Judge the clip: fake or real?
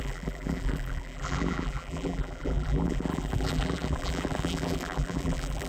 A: fake